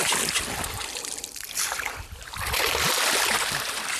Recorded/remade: remade